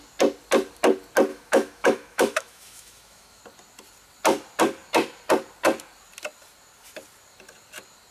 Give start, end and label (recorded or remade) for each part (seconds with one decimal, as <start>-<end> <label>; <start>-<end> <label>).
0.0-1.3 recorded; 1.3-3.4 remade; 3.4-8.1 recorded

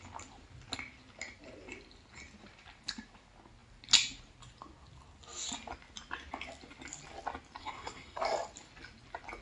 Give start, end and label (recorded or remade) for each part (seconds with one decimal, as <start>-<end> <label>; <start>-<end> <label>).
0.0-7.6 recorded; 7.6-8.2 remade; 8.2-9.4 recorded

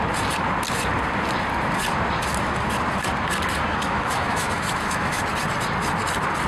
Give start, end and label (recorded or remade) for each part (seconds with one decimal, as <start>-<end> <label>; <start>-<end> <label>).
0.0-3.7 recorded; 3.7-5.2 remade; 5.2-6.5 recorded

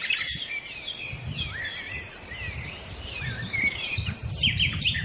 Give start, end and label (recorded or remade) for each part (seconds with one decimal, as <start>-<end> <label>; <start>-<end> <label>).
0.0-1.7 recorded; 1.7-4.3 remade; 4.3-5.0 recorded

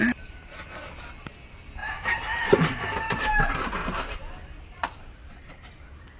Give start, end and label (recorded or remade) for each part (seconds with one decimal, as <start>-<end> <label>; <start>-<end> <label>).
0.0-1.8 recorded; 1.8-3.3 remade; 3.3-3.8 recorded; 3.8-5.7 remade; 5.7-6.2 recorded

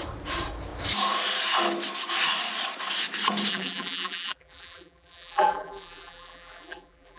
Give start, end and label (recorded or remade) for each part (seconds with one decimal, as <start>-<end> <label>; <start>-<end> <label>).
0.0-3.5 recorded; 3.5-7.2 remade

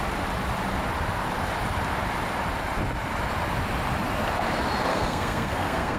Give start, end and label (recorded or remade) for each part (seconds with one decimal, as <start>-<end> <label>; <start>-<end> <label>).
0.0-4.9 recorded; 4.9-6.0 remade